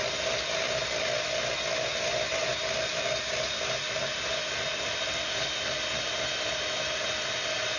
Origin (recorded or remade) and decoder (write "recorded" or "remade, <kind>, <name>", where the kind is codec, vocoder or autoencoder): recorded